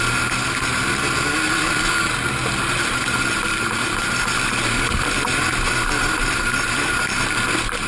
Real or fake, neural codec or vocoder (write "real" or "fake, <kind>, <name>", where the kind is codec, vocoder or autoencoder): real